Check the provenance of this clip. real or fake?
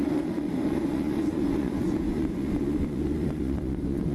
fake